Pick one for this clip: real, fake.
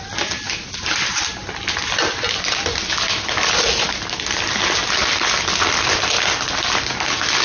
real